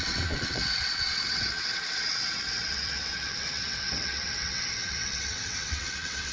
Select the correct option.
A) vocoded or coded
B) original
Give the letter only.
A